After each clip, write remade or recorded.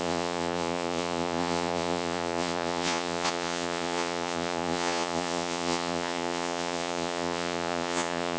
remade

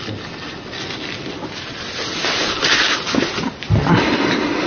recorded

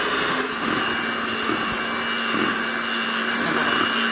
recorded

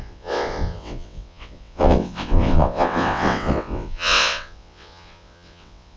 remade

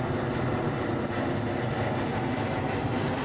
recorded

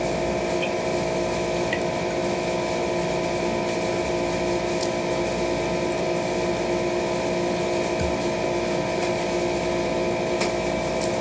recorded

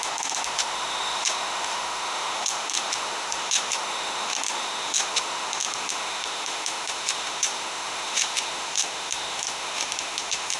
remade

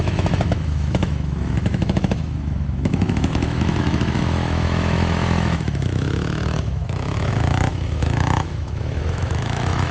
remade